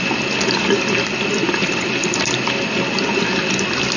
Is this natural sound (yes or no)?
yes